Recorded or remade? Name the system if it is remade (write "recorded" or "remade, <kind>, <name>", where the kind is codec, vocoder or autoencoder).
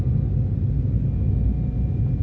recorded